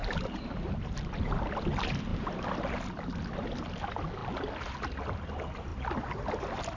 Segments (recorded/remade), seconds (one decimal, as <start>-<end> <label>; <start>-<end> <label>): 0.0-6.8 recorded